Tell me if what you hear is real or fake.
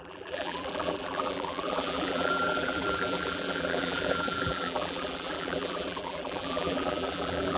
fake